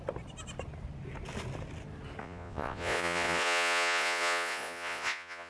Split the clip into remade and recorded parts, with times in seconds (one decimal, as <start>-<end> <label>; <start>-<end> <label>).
0.0-2.2 recorded; 2.2-5.5 remade